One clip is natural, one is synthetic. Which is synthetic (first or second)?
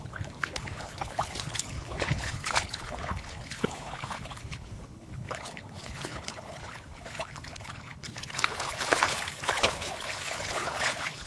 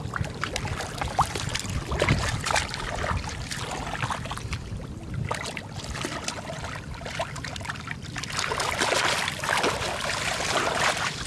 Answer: first